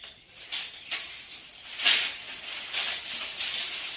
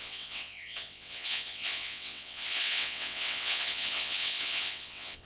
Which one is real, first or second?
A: first